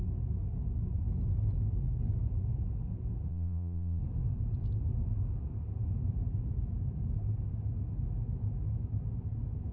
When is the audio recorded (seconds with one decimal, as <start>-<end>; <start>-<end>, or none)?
0.0-3.3; 4.0-9.7